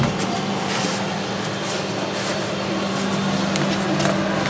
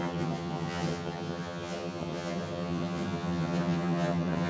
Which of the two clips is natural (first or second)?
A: first